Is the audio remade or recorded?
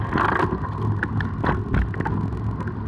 recorded